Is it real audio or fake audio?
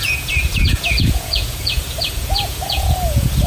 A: fake